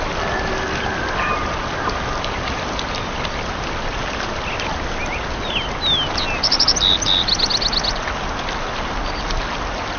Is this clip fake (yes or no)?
no